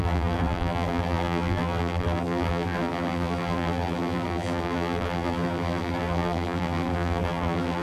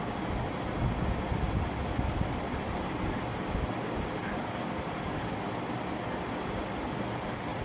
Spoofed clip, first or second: first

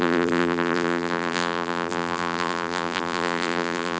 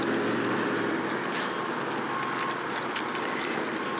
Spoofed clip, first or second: first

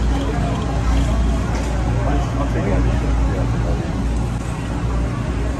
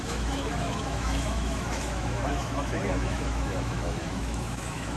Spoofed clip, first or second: second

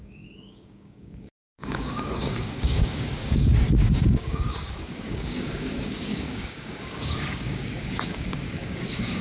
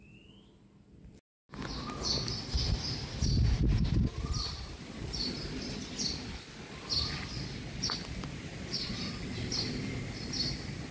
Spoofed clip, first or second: first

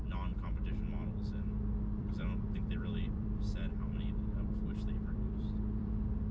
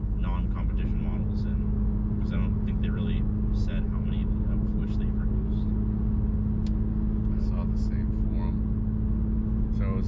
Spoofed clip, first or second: first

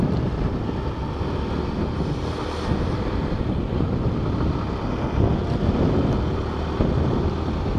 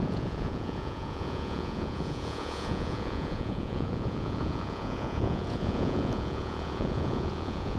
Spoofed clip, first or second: second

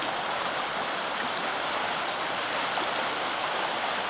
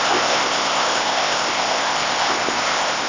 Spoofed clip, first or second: second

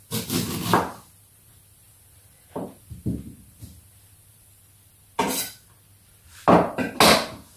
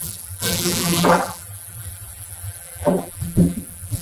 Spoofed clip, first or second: second